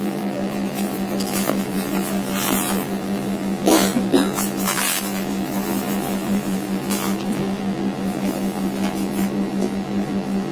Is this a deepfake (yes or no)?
yes